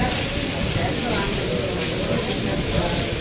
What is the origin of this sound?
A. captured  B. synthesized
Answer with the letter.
A